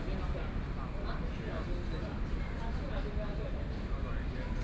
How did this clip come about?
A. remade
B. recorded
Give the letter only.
B